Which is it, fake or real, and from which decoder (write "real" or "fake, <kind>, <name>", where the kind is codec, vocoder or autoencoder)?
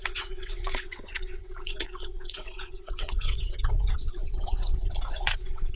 fake, vocoder, WaveNeXt